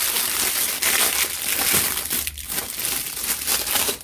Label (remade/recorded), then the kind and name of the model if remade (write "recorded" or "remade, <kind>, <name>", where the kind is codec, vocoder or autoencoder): recorded